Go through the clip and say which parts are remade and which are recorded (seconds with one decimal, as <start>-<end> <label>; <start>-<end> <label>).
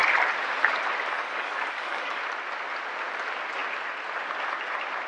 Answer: 0.0-1.1 recorded; 1.1-2.2 remade; 2.2-5.1 recorded